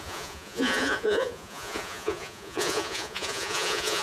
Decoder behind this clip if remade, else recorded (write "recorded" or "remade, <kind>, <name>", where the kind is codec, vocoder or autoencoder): remade, vocoder, Vocos